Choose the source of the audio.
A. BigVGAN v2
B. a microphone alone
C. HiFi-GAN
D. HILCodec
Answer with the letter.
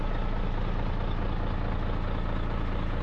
B